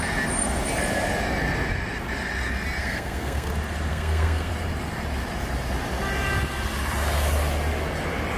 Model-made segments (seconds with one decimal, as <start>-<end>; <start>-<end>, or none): 2.8-3.5; 3.9-4.5